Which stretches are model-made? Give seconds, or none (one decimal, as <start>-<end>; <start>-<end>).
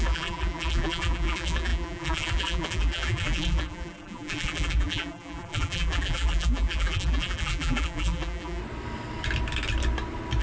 0.0-8.6